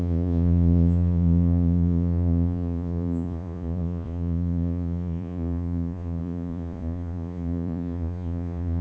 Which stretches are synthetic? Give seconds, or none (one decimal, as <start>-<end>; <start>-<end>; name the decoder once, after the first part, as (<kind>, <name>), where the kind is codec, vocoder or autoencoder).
0.0-8.8 (vocoder, Vocos)